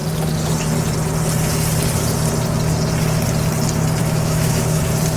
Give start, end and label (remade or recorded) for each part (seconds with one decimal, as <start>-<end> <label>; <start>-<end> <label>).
0.0-4.0 recorded; 4.0-4.8 remade; 4.8-5.2 recorded